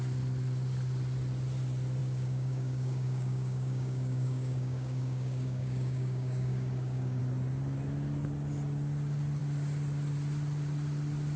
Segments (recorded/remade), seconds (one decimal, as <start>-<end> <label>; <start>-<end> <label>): 0.0-2.0 recorded; 2.0-7.2 remade; 7.2-11.4 recorded